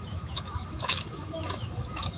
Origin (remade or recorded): remade